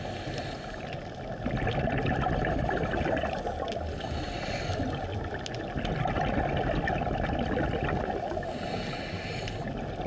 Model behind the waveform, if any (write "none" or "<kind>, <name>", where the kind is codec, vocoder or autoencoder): none